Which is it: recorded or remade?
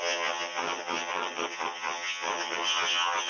remade